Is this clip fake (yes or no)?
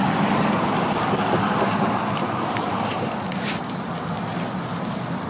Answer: no